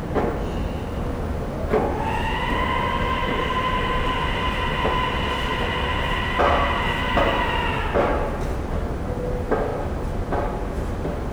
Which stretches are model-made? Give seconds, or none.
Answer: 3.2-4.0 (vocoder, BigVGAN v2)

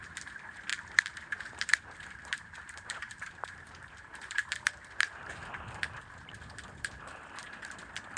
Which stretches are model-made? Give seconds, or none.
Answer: 0.7-5.3 (vocoder, BigVGAN v2)